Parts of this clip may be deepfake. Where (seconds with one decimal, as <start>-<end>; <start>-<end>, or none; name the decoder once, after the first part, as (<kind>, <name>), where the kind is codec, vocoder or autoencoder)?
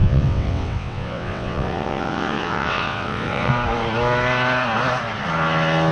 0.0-3.5 (vocoder, WaveNeXt)